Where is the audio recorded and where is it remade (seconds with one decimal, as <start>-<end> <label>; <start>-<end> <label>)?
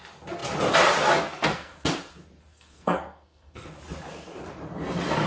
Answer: 0.0-1.3 recorded; 1.3-2.0 remade; 2.0-2.5 recorded; 2.5-3.8 remade; 3.8-5.3 recorded